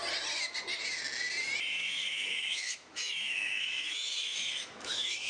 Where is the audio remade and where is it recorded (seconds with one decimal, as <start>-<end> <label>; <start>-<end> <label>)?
0.0-1.7 recorded; 1.7-5.3 remade